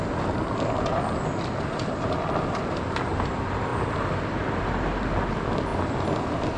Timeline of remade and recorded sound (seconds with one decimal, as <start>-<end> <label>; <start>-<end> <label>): 0.0-6.6 recorded